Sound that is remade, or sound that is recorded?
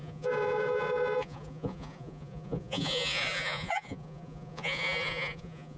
remade